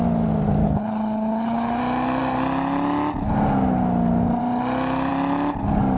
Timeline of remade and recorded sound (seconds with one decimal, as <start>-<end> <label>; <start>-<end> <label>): 0.0-0.6 recorded; 0.6-1.8 remade; 1.8-6.0 recorded